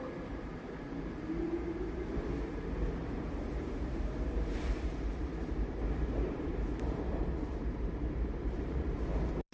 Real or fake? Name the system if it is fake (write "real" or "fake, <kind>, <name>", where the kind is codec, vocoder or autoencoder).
fake, vocoder, BigVGAN v2